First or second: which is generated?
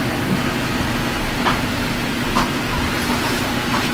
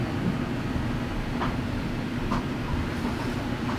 second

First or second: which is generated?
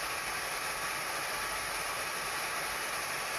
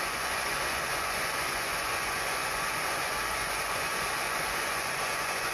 second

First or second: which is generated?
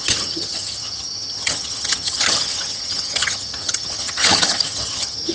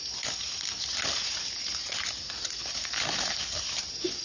first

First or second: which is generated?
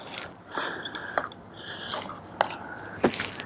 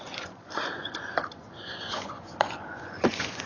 second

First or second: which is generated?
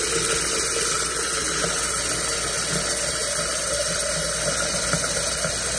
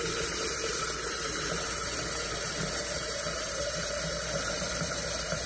second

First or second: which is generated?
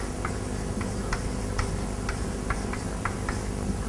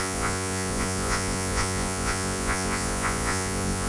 second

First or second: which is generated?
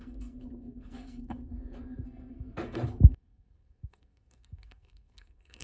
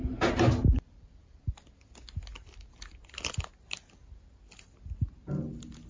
first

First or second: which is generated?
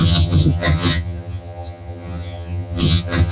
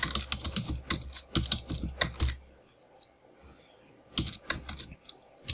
first